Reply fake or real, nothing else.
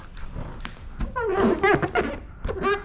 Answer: real